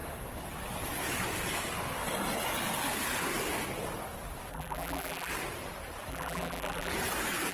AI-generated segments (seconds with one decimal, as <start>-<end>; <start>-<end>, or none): 4.5-5.3; 6.1-6.9